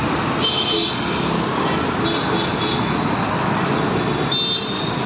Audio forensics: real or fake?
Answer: real